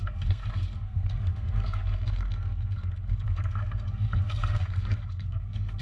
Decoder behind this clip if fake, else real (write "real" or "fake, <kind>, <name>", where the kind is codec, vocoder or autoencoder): fake, codec, SNAC